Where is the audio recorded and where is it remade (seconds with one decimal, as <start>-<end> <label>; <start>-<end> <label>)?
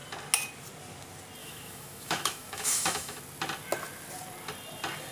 0.0-1.4 recorded; 1.4-3.2 remade; 3.2-5.1 recorded